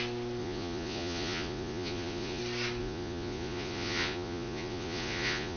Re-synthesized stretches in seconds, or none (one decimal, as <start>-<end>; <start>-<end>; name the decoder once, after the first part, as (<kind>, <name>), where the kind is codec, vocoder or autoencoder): 0.4-2.4 (vocoder, Vocos); 2.8-5.6